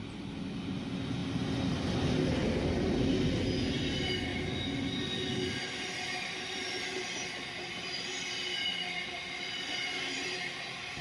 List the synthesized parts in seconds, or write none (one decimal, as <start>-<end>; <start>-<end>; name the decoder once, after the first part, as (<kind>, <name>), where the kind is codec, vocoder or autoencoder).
none